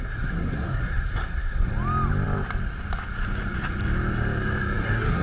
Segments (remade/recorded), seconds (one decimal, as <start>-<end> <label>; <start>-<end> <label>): 0.0-1.7 remade; 1.7-4.8 recorded; 4.8-5.2 remade